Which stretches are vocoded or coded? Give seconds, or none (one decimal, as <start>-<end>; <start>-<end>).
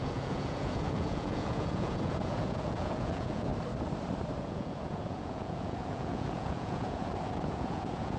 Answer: 0.0-3.5; 4.4-8.2